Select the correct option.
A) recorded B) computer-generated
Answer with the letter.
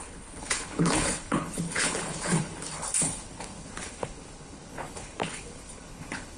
B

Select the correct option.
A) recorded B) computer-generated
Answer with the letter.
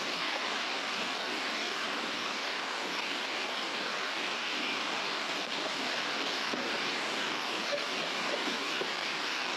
B